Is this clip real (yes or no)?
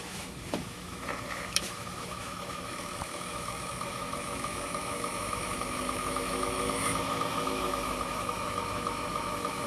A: no